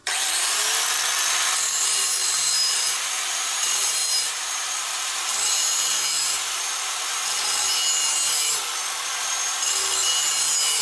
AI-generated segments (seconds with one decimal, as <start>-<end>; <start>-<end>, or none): 0.0-0.8; 2.2-7.4